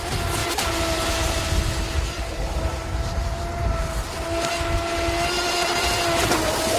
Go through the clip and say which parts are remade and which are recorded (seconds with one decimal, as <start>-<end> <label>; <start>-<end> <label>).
0.0-0.4 recorded; 0.4-1.4 remade; 1.4-2.7 recorded; 2.7-3.4 remade; 3.4-6.8 recorded